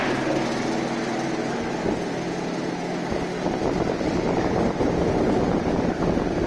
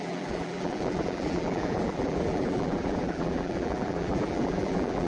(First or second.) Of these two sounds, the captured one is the first